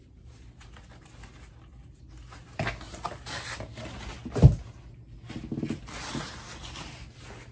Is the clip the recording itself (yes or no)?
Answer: yes